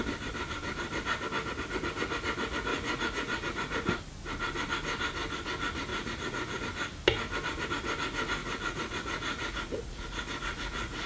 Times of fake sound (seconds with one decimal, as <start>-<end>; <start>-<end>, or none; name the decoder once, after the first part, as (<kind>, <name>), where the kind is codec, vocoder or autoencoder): 2.7-4.0 (vocoder, Vocos); 5.9-6.6; 8.4-11.1